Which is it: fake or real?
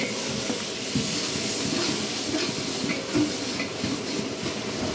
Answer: real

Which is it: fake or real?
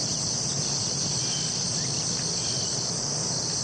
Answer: real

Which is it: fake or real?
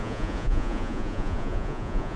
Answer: fake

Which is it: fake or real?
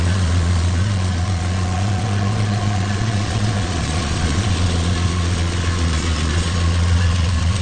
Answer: fake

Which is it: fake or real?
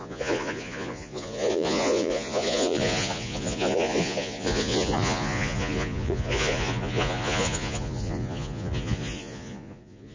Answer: fake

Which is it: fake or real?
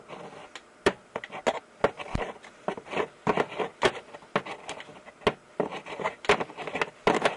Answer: real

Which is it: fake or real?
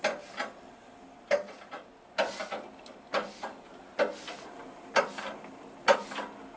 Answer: real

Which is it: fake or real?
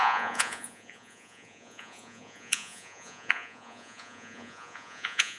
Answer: fake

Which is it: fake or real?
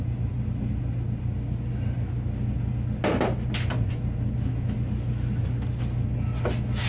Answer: real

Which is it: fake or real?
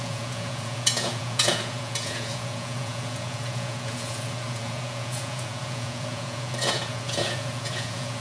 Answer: fake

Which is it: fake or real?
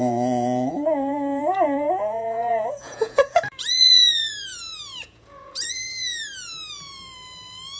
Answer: fake